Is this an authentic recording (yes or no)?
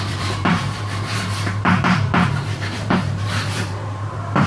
no